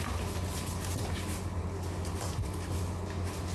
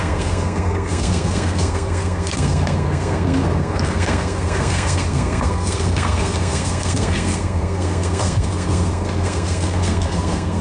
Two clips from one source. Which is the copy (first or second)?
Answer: second